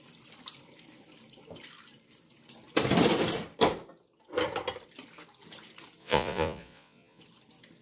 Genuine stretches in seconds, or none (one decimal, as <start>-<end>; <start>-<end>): 0.0-6.0; 7.2-7.8